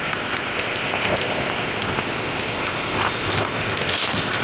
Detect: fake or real fake